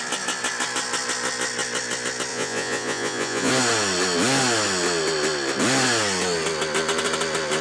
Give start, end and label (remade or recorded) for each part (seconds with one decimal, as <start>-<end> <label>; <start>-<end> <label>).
0.0-2.3 recorded; 2.3-3.5 remade; 3.5-7.6 recorded